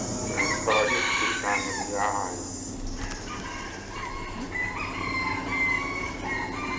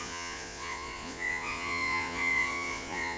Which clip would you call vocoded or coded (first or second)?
second